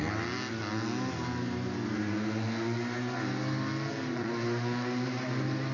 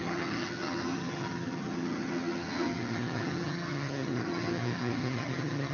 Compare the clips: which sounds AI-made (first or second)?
second